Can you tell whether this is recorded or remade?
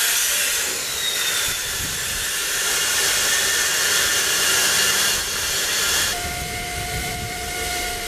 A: recorded